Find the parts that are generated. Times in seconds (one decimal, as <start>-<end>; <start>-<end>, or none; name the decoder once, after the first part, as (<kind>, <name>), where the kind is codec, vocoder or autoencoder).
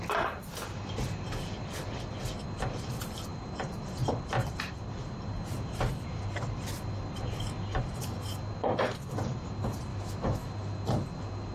9.9-10.5 (autoencoder, DAC-VAE)